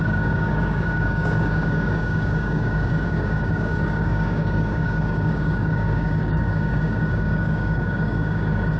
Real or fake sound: fake